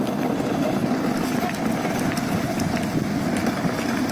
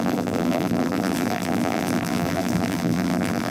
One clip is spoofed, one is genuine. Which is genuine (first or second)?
first